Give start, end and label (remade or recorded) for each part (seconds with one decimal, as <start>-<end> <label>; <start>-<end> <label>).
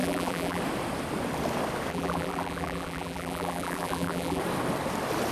0.0-0.6 remade; 0.6-1.9 recorded; 1.9-4.4 remade; 4.4-5.3 recorded